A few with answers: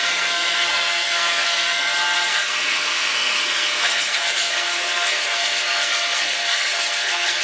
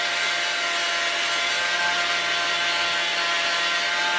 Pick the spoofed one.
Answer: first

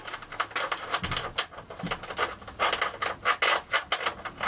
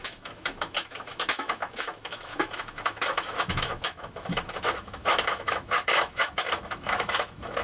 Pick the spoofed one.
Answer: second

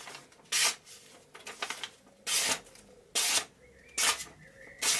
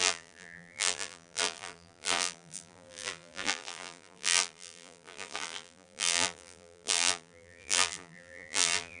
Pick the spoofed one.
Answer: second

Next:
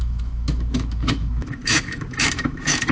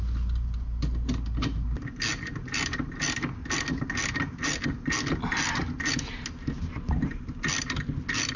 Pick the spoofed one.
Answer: first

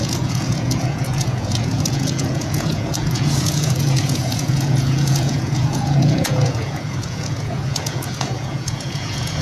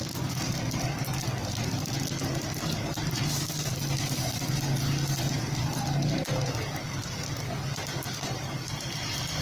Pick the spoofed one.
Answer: first